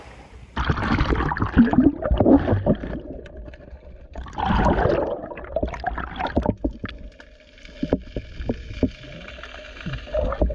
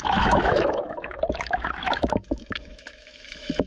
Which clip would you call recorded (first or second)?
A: first